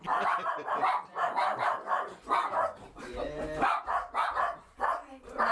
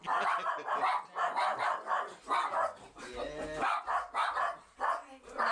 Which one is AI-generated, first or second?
first